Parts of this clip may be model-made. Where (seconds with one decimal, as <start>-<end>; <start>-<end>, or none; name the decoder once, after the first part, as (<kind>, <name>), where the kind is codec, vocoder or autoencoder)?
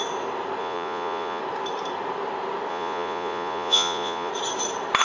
0.6-1.4 (vocoder, Vocos); 2.7-4.3